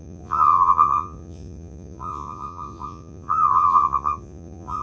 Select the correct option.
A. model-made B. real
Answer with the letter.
A